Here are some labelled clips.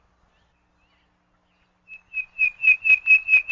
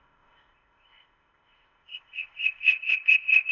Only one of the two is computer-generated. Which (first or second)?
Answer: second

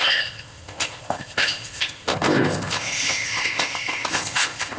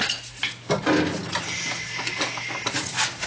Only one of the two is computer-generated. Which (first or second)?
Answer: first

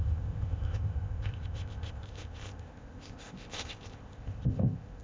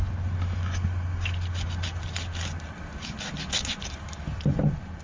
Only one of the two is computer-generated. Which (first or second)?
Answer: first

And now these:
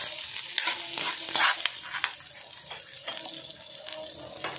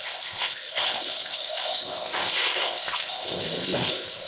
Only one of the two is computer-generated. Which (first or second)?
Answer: second